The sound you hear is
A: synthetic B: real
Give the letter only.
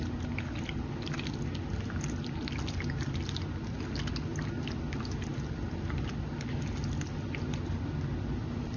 B